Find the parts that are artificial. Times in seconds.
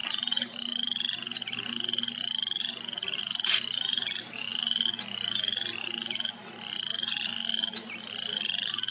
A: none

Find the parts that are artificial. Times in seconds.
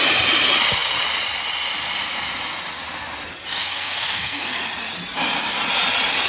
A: 3.5-4.6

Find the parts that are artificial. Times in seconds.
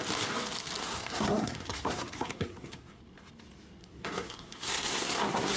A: 0.8-3.0; 3.8-5.6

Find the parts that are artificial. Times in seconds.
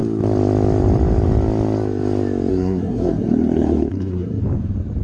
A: 2.5-4.4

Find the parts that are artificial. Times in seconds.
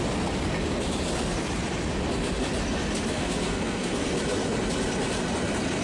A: 3.1-4.1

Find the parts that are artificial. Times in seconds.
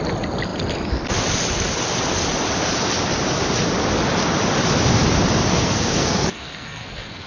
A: 5.5-7.3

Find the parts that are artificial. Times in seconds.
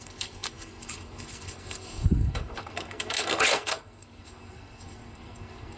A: 0.0-5.8